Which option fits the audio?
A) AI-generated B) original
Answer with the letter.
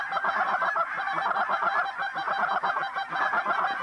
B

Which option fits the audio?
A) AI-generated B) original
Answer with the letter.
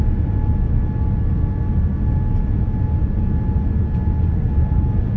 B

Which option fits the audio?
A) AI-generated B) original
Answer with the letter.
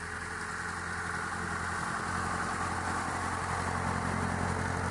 B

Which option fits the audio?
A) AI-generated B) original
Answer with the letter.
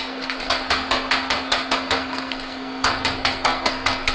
A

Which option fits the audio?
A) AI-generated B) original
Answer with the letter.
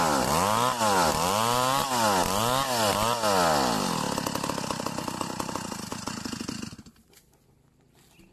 B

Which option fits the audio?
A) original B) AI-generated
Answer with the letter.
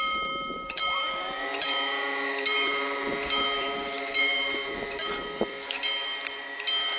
B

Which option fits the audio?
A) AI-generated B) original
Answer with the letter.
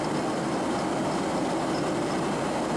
B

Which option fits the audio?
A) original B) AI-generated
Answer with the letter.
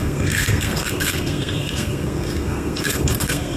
B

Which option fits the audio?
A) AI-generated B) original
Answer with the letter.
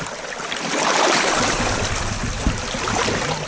B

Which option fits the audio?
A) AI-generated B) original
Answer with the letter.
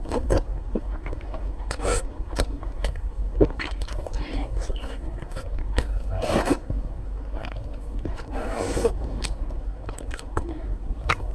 A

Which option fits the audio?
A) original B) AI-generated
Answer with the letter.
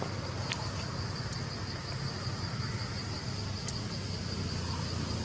A